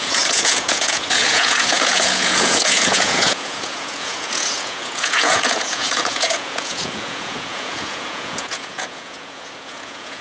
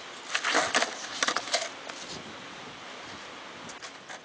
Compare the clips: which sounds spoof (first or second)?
first